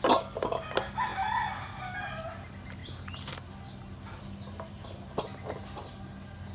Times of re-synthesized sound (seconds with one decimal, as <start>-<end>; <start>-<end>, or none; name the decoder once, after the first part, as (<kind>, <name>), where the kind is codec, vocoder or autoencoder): none